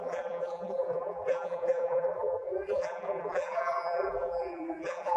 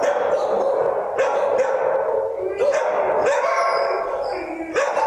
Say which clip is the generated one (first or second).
first